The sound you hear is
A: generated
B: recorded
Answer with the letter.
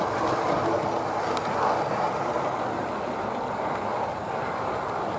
B